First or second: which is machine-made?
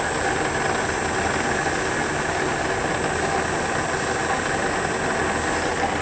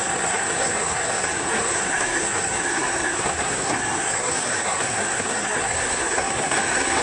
second